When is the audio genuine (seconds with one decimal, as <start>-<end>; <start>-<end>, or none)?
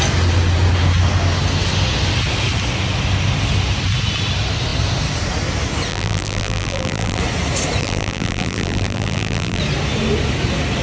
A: 0.0-5.9; 7.2-7.8; 9.6-10.8